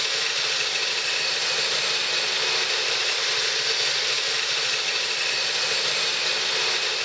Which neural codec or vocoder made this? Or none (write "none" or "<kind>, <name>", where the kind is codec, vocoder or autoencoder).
vocoder, BigVGAN v2